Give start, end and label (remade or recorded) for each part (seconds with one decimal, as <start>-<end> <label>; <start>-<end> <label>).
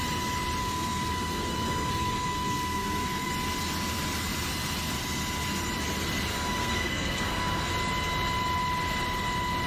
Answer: 0.0-0.6 recorded; 0.6-3.3 remade; 3.3-6.3 recorded; 6.3-7.7 remade; 7.7-9.7 recorded